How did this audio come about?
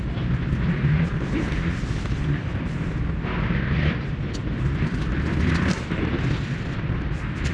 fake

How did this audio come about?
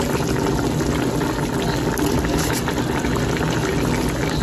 real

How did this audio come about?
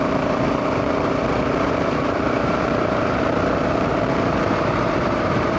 fake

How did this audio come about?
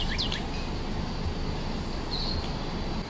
real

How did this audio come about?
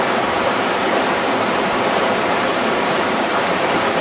fake